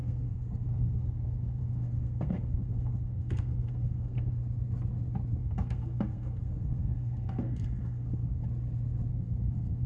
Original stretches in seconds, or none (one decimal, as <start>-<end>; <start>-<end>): 4.4-5.4; 8.4-9.1